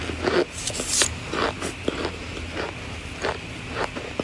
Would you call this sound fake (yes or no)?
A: no